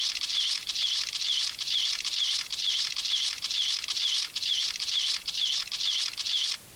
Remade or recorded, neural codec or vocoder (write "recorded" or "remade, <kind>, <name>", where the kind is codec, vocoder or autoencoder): recorded